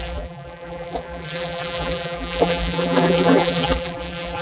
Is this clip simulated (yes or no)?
yes